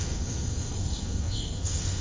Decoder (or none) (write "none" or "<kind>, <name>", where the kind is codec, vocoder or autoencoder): codec, SNAC